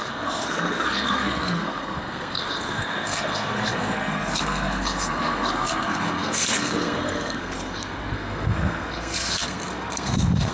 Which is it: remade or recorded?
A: remade